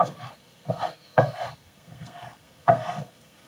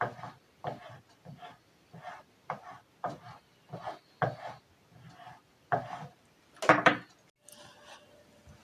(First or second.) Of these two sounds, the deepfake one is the first